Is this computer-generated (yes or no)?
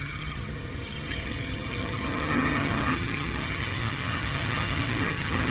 yes